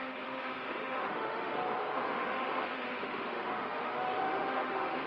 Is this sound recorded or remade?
remade